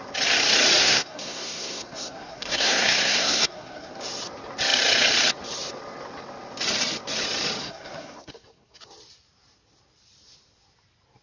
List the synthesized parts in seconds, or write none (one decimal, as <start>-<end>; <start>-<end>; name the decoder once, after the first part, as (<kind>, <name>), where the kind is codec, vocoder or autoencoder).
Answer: 0.8-4.0 (codec, SNAC); 7.6-8.8